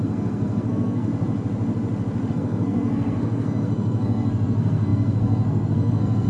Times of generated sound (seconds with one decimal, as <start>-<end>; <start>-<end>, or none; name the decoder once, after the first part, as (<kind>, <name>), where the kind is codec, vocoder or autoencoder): 0.0-1.1 (codec, SNAC); 2.3-6.3